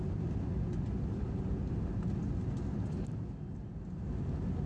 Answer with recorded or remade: recorded